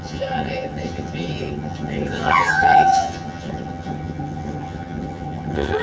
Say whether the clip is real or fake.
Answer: fake